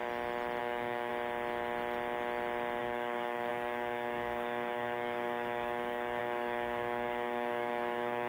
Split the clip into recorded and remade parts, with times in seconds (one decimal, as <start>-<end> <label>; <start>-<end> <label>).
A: 0.0-0.6 recorded; 0.6-1.1 remade; 1.1-2.8 recorded; 2.8-8.3 remade

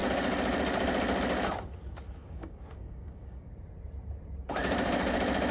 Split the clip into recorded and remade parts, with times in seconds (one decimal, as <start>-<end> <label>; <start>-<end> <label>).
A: 0.0-2.2 recorded; 2.2-3.5 remade; 3.5-5.5 recorded

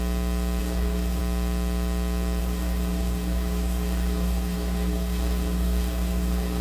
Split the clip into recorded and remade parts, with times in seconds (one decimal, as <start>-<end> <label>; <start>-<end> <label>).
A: 0.0-0.6 recorded; 0.6-1.2 remade; 1.2-2.4 recorded; 2.4-6.6 remade

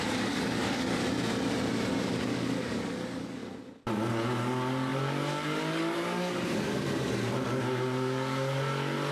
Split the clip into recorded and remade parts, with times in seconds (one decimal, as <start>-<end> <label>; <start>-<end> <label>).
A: 0.0-1.0 remade; 1.0-2.1 recorded; 2.1-3.4 remade; 3.4-4.1 recorded; 4.1-9.1 remade